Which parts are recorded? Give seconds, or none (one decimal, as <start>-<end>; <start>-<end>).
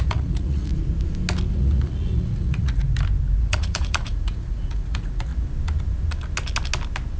0.7-1.5; 2.8-3.4; 5.3-7.2